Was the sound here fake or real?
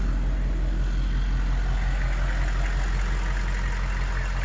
real